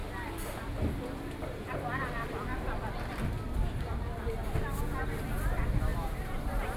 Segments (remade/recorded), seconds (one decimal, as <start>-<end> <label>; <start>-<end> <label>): 0.0-2.9 remade; 2.9-3.9 recorded; 3.9-4.6 remade; 4.6-5.9 recorded; 5.9-6.8 remade